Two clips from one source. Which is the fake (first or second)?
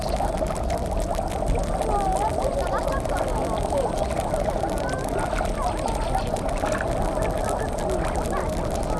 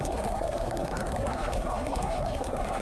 second